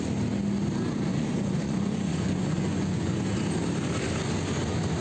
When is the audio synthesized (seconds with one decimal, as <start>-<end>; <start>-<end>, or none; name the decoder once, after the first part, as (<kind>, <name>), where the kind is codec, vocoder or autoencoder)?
1.1-3.2 (vocoder, Vocos)